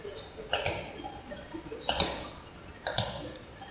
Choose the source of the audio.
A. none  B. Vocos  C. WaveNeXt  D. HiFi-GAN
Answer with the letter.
B